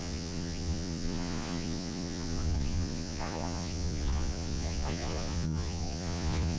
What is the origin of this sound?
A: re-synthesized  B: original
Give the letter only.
A